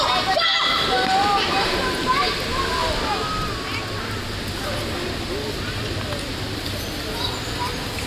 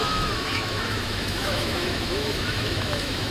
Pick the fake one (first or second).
second